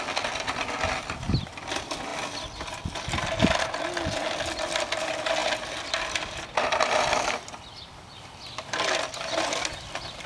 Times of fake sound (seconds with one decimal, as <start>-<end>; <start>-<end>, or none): none